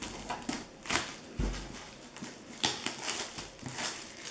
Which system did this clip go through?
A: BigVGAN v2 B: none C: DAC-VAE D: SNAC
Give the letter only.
B